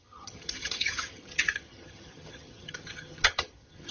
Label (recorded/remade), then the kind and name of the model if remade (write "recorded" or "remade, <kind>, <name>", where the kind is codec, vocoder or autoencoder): remade, vocoder, HiFi-GAN